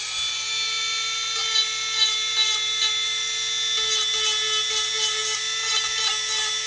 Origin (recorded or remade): recorded